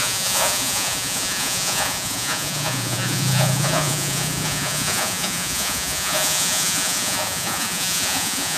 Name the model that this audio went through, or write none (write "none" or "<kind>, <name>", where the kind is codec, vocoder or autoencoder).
vocoder, Vocos